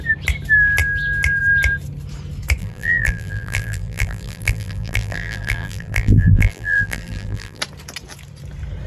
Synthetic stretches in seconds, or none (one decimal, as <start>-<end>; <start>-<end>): 2.6-7.6